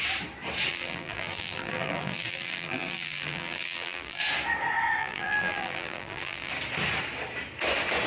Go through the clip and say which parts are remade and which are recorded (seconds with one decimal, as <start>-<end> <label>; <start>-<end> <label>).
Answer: 0.0-0.7 recorded; 0.7-4.2 remade; 4.2-5.0 recorded; 5.0-6.5 remade; 6.5-8.1 recorded